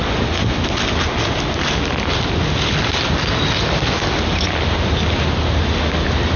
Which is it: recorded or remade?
recorded